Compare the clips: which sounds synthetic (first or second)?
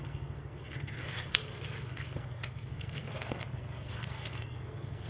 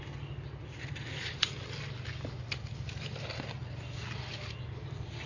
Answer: first